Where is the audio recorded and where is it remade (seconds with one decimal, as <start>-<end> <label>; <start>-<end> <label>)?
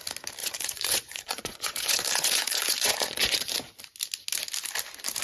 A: 0.0-0.4 recorded; 0.4-3.5 remade; 3.5-5.2 recorded